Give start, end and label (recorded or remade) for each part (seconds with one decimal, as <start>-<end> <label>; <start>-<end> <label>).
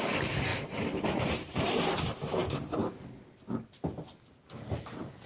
0.0-0.5 recorded; 0.5-1.9 remade; 1.9-5.3 recorded